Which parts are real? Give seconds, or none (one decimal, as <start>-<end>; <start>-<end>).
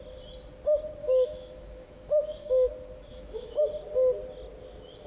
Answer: 0.0-1.0; 2.7-3.1; 3.6-5.1